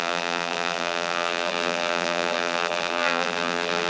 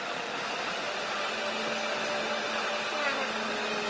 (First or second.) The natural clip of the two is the second